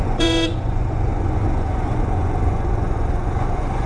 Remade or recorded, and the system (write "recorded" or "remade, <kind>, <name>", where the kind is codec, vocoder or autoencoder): remade, vocoder, Vocos